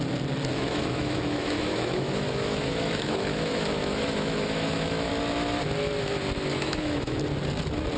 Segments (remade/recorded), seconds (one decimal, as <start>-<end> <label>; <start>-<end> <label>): 0.0-0.5 recorded; 0.5-5.1 remade; 5.1-6.5 recorded; 6.5-7.2 remade; 7.2-8.0 recorded